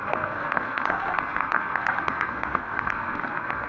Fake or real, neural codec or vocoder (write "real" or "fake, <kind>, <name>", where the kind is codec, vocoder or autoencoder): fake, codec, SNAC